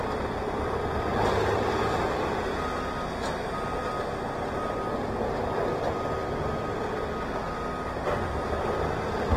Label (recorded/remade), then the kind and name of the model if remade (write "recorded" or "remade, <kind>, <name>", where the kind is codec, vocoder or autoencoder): recorded